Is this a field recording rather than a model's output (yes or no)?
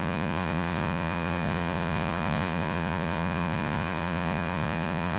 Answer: no